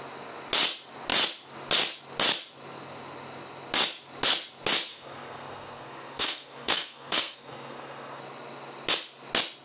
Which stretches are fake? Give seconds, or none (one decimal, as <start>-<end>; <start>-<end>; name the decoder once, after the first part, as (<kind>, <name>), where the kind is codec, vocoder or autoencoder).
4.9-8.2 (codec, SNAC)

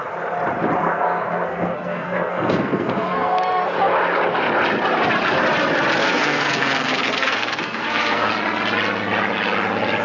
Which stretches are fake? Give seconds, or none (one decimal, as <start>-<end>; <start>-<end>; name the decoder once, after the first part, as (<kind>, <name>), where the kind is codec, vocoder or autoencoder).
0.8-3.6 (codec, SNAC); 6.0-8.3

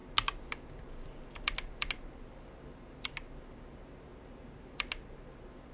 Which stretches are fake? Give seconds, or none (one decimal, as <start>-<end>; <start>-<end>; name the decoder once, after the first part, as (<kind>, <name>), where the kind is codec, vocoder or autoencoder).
none